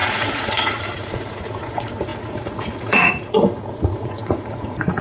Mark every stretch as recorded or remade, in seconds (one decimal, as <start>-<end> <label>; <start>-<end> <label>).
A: 0.0-5.0 remade